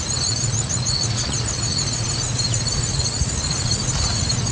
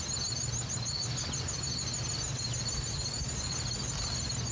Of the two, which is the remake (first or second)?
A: first